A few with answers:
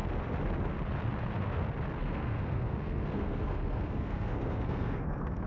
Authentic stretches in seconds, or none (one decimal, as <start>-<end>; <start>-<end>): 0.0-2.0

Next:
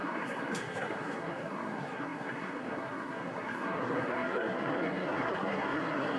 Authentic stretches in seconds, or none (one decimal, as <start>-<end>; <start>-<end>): none

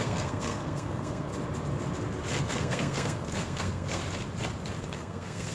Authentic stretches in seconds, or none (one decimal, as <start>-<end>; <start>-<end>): 1.3-2.4; 4.0-4.8

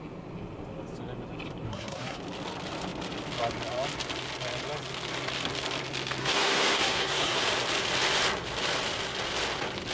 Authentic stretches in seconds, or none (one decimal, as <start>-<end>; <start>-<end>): 0.0-1.7; 2.2-6.2; 7.4-9.9

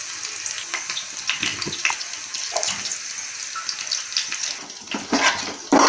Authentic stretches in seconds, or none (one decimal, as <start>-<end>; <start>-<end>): 0.0-5.9

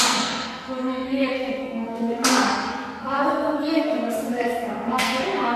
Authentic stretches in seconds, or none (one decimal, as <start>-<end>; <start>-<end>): none